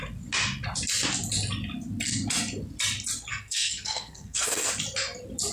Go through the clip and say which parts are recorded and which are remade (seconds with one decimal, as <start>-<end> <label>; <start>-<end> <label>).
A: 0.0-3.3 recorded; 3.3-4.7 remade; 4.7-5.5 recorded